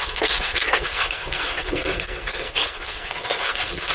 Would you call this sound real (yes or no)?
no